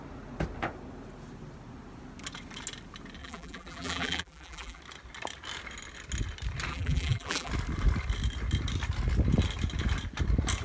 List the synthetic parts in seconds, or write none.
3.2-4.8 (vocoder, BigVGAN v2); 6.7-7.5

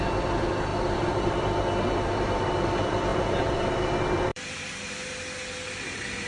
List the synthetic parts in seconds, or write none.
0.7-1.4 (vocoder, BigVGAN v2); 3.1-3.9; 4.3-4.9

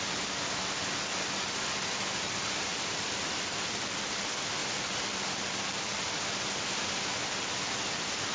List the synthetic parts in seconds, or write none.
2.7-4.1 (vocoder, BigVGAN v2); 4.6-6.0

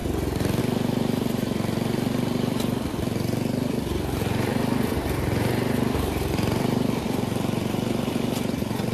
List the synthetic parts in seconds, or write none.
0.6-8.9 (vocoder, BigVGAN v2)

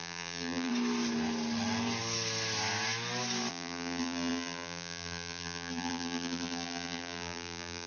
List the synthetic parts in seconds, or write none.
0.0-0.7 (vocoder, BigVGAN v2); 3.5-7.9